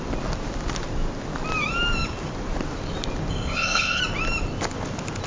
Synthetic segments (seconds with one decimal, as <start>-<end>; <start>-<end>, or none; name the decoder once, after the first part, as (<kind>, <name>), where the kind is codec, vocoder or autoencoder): 3.3-4.0 (codec, ZipCodec)